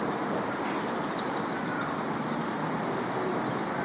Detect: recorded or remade recorded